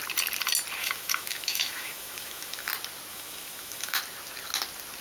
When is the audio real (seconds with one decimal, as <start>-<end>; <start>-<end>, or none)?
0.0-0.8; 2.7-3.1; 4.0-5.0